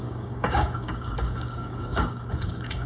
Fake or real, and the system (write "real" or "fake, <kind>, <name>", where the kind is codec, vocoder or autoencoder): fake, codec, DAC